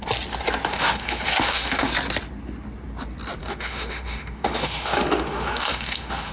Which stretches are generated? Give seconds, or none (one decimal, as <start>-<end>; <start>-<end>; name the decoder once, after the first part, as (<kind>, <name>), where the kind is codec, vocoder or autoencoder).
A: 0.7-1.9 (autoencoder, DAC-VAE); 3.4-6.3